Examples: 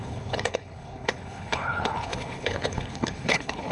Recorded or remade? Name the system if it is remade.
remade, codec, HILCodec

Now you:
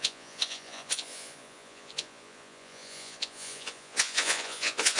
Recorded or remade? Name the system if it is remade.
remade, vocoder, Vocos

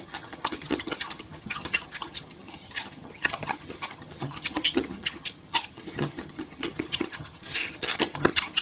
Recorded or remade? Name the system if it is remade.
remade, vocoder, HiFi-GAN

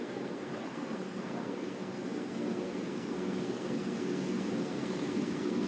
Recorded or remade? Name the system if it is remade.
remade, codec, SNAC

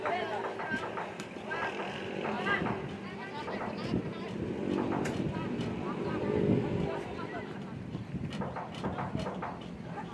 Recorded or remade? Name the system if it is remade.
remade, vocoder, BigVGAN v2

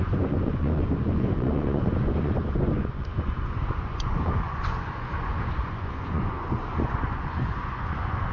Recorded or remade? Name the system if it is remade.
remade, vocoder, Vocos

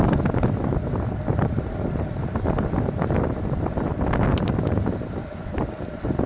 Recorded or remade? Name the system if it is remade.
recorded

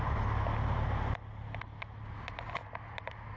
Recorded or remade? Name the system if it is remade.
recorded